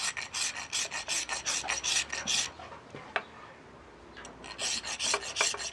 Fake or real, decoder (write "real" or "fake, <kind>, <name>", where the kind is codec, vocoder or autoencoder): real